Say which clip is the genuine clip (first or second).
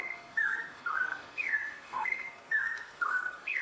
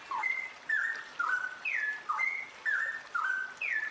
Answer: second